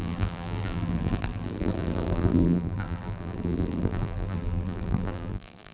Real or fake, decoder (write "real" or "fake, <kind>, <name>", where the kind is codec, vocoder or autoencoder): fake, vocoder, BigVGAN v2